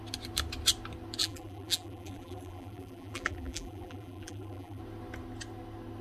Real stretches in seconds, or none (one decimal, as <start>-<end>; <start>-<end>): 0.0-1.2; 4.8-6.0